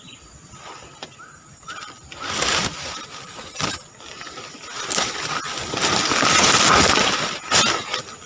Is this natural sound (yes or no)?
yes